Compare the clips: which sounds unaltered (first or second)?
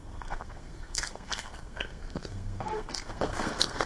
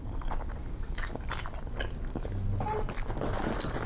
second